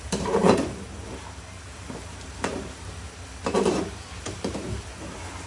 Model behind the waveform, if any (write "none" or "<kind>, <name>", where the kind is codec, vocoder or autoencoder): vocoder, BigVGAN v2